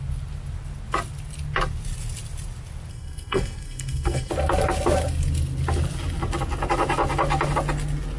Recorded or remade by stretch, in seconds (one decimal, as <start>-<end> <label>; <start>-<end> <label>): 0.0-2.9 recorded; 2.9-4.3 remade; 4.3-8.2 recorded